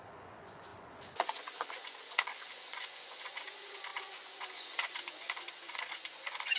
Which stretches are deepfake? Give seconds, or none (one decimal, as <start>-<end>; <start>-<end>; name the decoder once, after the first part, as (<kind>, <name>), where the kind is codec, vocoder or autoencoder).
0.0-6.6 (vocoder, Vocos)